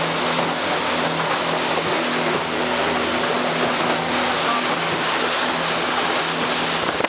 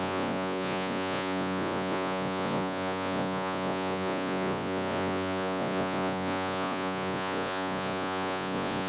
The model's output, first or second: second